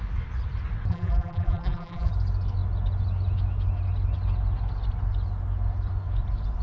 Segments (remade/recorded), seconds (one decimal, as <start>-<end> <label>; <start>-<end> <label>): 0.0-0.9 recorded; 0.9-2.1 remade; 2.1-6.6 recorded

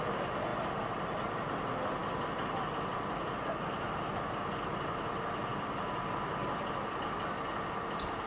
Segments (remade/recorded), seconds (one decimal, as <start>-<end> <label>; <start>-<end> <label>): 0.0-8.3 recorded

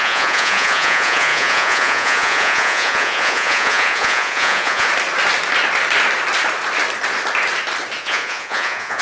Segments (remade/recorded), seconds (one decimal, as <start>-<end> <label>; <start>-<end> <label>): 0.0-4.9 remade; 4.9-8.0 recorded; 8.0-9.0 remade

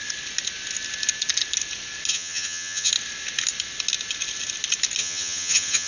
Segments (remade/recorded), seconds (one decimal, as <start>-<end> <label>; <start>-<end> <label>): 0.0-2.1 recorded; 2.1-2.9 remade; 2.9-5.0 recorded; 5.0-5.9 remade

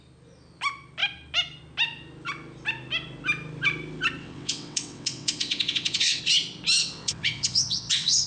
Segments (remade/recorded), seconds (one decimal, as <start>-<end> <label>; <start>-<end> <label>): 0.0-4.2 recorded; 4.2-6.2 remade; 6.2-6.8 recorded; 6.8-8.3 remade

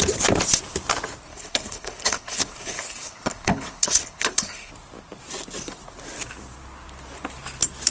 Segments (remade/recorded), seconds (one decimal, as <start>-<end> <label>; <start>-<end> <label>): 0.0-1.3 recorded; 1.3-4.7 remade; 4.7-7.9 recorded

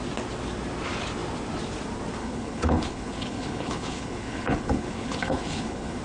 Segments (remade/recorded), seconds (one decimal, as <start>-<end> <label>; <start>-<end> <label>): 0.0-2.2 recorded; 2.2-6.0 remade